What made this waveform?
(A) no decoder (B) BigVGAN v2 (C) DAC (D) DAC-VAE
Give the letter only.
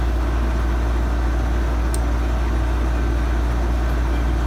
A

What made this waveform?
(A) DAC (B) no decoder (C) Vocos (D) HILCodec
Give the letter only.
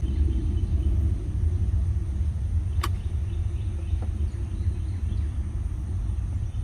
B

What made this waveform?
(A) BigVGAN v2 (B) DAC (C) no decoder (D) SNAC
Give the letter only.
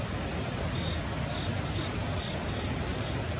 C